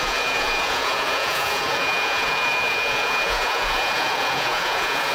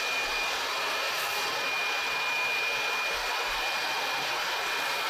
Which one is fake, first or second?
first